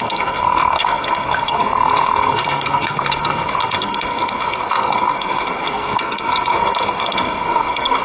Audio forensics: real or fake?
fake